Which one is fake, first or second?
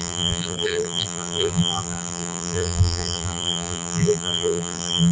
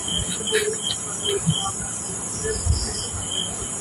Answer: first